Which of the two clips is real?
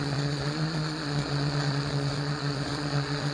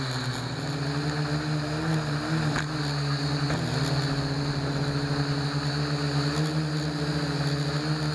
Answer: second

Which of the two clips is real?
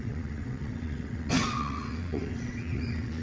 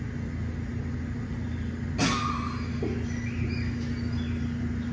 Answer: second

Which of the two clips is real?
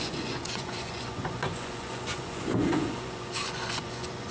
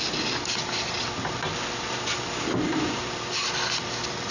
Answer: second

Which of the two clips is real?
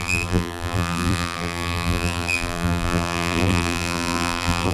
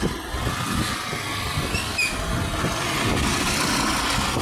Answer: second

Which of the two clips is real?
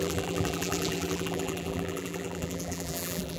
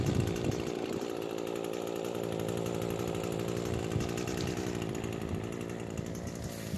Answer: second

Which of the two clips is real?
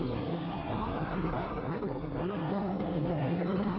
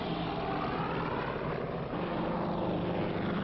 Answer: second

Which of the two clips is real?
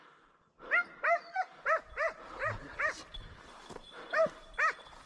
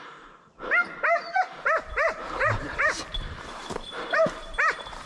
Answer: first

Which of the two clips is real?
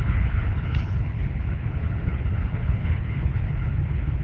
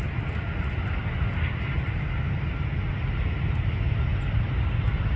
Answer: second